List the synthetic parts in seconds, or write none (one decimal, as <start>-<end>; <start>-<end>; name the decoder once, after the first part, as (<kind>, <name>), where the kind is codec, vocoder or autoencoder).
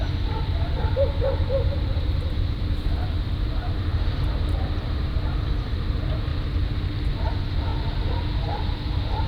0.0-6.3 (vocoder, BigVGAN v2); 7.3-7.7; 8.7-9.3